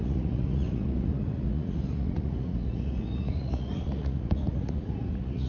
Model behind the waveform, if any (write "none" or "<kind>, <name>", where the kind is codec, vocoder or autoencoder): vocoder, Vocos